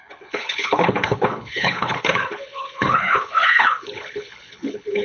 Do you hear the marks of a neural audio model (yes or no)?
yes